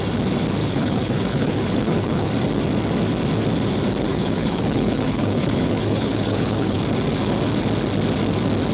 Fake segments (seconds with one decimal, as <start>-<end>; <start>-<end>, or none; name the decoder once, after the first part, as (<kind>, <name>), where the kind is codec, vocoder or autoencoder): 0.6-2.3 (codec, HILCodec); 4.1-6.8

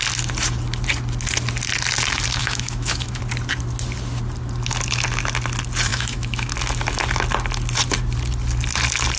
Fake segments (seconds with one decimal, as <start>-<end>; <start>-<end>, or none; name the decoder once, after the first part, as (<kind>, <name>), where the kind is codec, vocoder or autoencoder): 2.4-3.2 (autoencoder, DAC-VAE); 5.9-6.5

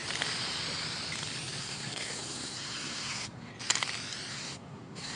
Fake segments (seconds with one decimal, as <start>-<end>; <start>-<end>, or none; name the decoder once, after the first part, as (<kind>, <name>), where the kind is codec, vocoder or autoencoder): 1.6-3.5 (codec, SNAC); 4.3-5.2

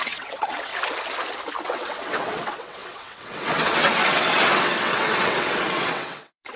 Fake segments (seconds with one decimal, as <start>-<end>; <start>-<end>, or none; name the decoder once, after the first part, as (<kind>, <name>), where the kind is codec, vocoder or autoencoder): 0.0-0.7 (vocoder, WaveNeXt); 1.6-6.6

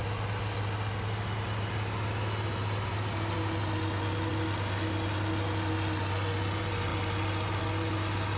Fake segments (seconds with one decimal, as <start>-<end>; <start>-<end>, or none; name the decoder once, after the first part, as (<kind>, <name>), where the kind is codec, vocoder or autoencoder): none

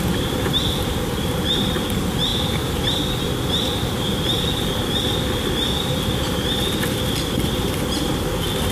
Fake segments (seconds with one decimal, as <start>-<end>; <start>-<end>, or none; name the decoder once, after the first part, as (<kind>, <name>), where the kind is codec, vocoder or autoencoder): 2.3-3.0 (vocoder, BigVGAN v2)